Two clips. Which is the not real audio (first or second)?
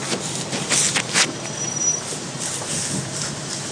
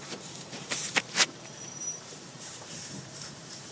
second